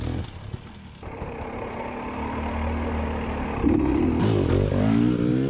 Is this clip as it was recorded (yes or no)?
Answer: yes